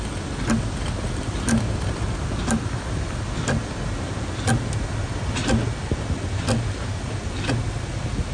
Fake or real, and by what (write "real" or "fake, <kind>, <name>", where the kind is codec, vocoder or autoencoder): real